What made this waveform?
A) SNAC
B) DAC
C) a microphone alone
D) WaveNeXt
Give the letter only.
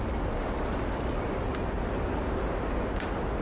C